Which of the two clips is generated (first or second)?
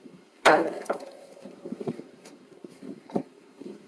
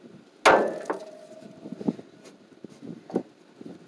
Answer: first